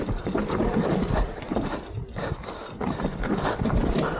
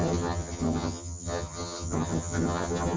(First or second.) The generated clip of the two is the second